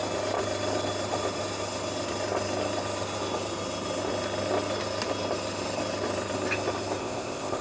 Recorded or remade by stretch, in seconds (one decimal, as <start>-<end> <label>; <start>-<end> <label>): 0.0-7.0 recorded; 7.0-7.6 remade